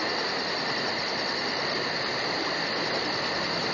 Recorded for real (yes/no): yes